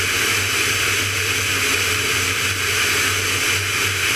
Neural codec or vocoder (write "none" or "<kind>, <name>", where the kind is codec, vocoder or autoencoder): none